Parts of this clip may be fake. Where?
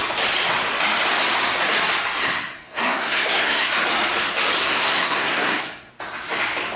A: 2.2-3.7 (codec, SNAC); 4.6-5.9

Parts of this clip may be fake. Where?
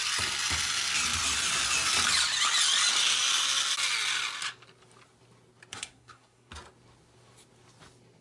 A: 5.7-6.5 (codec, SNAC)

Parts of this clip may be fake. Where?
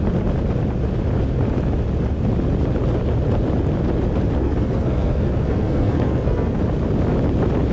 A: 4.4-6.6 (codec, SNAC)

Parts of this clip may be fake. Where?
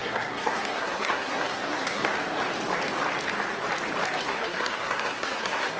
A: 0.0-2.1 (codec, SNAC); 4.2-5.8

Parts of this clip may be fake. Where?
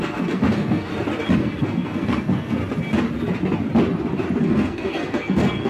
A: 0.0-0.9 (codec, SNAC); 1.4-2.6; 4.4-5.7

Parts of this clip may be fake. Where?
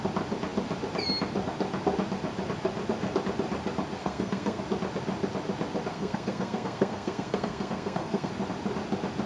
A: 4.0-4.6 (codec, SNAC); 5.9-8.3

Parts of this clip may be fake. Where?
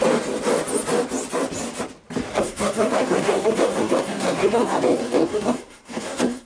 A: 2.3-6.5 (codec, SNAC)